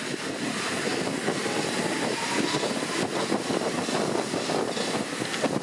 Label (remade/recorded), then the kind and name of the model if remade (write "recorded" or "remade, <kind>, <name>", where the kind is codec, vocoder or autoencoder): recorded